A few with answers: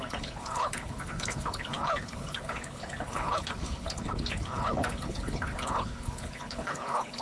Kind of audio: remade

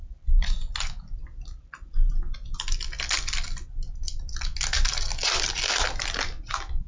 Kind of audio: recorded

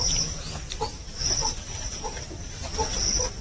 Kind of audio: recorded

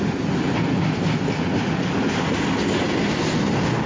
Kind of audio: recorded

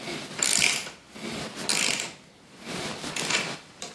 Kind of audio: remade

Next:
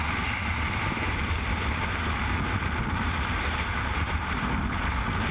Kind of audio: recorded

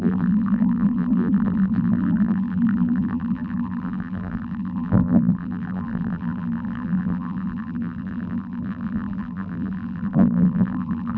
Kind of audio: remade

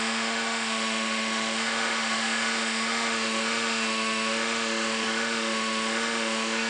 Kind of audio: remade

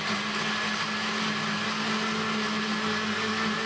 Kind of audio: recorded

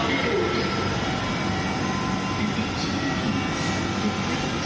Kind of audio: recorded